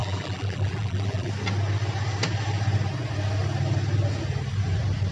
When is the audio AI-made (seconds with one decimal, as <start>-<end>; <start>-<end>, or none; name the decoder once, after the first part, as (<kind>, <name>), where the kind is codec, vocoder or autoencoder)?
0.0-1.3 (vocoder, BigVGAN v2)